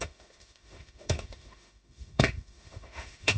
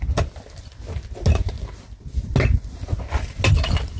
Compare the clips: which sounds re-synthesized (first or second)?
first